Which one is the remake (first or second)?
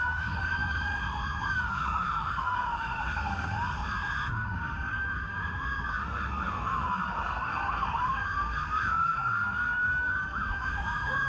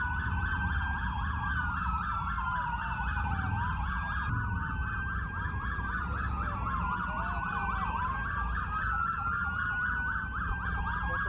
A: first